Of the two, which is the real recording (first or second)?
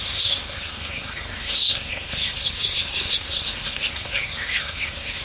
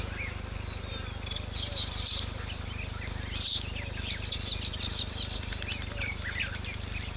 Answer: second